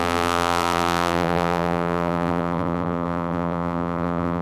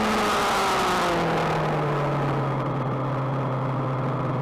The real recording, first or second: second